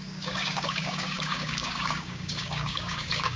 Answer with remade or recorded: remade